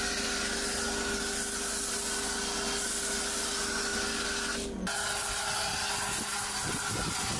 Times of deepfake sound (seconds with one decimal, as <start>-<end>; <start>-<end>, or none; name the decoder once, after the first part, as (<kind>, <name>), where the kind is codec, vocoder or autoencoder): none